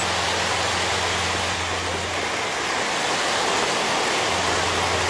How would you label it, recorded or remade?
recorded